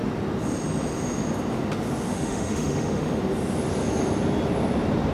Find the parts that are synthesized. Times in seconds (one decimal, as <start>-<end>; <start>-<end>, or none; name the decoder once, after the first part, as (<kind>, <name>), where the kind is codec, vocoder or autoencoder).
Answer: 2.1-3.2 (autoencoder, DAC-VAE)